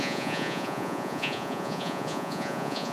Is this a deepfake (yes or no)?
yes